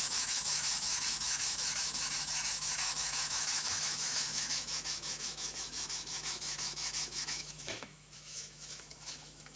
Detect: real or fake fake